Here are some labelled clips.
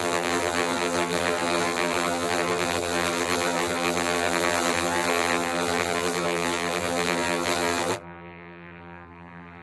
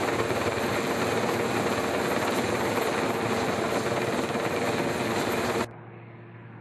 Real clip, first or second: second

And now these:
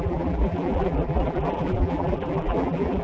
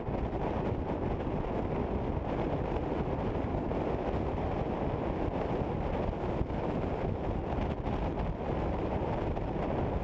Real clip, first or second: second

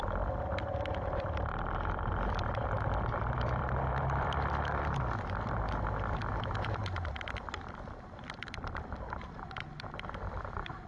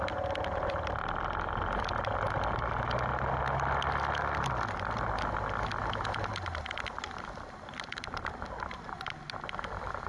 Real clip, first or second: second